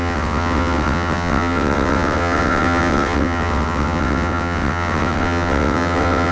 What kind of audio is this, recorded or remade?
remade